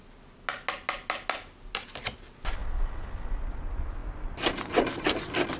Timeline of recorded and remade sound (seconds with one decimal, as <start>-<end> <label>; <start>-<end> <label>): 0.0-5.6 recorded